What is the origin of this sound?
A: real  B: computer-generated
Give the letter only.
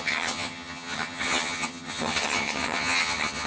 B